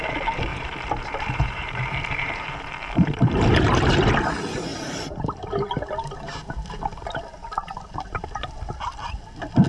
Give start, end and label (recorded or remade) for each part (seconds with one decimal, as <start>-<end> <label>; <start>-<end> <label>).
0.0-0.5 recorded; 0.5-4.1 remade; 4.1-4.7 recorded; 4.7-5.7 remade; 5.7-9.7 recorded